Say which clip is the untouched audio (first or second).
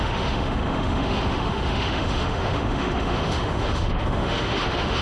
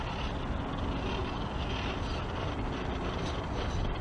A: second